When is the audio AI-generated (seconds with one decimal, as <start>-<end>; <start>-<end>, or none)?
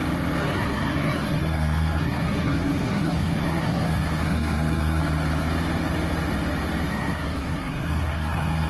0.4-5.0; 6.9-8.7